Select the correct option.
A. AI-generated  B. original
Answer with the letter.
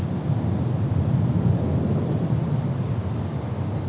B